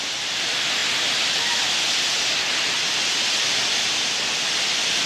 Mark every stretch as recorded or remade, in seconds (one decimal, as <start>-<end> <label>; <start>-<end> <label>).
0.0-5.1 recorded